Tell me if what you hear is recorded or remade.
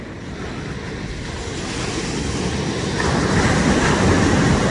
recorded